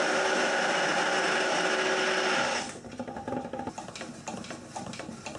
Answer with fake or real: real